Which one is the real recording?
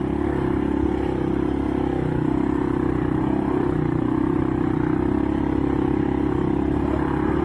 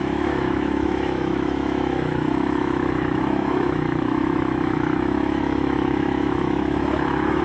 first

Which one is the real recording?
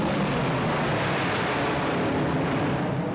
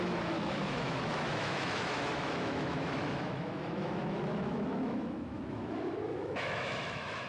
first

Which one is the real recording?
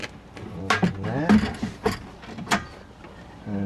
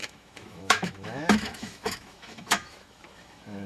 first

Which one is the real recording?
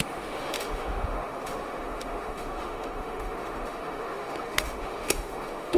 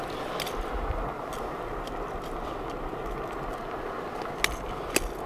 second